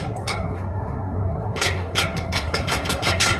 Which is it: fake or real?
fake